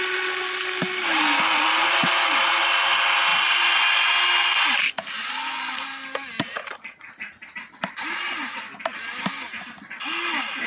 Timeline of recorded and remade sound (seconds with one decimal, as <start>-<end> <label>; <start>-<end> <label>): 0.0-10.7 recorded